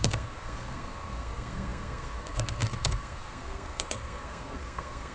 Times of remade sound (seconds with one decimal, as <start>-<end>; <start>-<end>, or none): 0.0-5.1